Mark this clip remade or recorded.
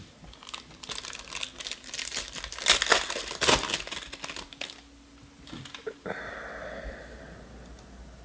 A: recorded